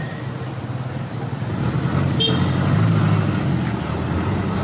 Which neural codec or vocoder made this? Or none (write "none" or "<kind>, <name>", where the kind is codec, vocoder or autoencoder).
none